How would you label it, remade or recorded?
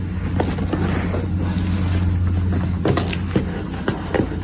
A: recorded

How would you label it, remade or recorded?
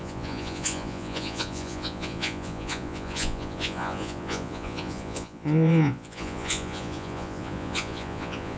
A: remade